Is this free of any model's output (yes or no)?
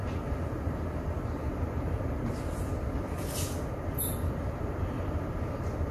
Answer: no